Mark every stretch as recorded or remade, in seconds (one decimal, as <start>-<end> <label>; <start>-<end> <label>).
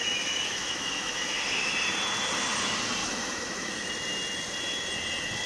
0.0-1.7 remade; 1.7-3.0 recorded; 3.0-3.9 remade; 3.9-5.5 recorded